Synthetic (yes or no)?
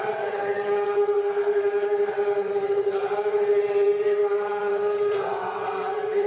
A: yes